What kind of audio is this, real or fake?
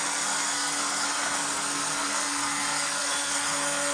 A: fake